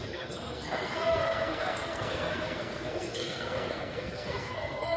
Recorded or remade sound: remade